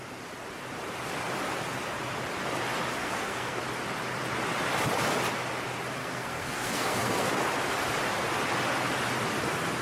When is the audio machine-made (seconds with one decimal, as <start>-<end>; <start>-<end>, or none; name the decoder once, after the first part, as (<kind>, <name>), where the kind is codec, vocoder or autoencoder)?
3.0-3.6 (codec, SNAC); 6.0-7.3